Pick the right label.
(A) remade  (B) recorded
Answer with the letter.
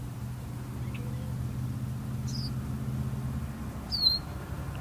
B